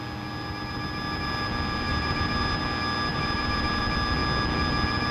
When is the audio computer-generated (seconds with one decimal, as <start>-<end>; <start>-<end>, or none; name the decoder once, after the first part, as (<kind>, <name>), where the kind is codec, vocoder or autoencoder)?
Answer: 1.9-2.6 (vocoder, BigVGAN v2); 3.1-3.8